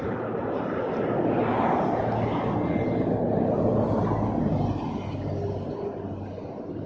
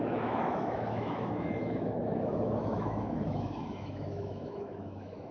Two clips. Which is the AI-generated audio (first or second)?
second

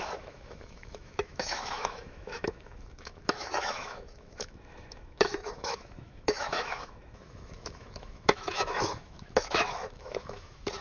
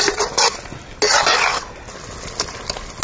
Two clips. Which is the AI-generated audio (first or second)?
first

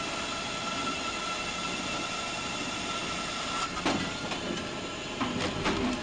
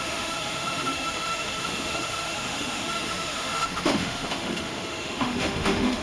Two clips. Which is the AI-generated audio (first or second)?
second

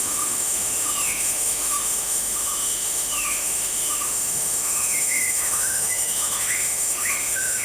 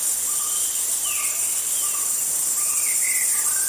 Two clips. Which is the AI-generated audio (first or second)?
first